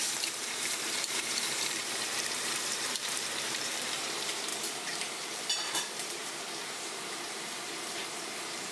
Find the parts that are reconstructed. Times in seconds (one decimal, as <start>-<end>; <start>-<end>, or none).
0.0-4.5; 5.1-8.7